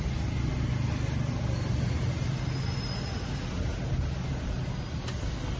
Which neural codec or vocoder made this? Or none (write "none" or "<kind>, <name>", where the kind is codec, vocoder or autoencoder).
none